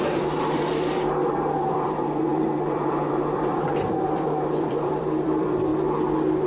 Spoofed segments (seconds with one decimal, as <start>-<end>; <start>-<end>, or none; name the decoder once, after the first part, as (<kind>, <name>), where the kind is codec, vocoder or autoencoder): 0.0-5.7 (vocoder, BigVGAN v2)